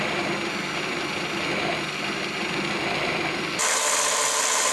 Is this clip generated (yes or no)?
no